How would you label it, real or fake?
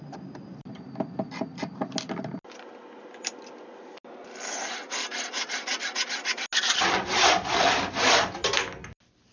real